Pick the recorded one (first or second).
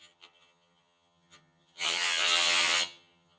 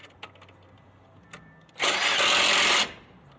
second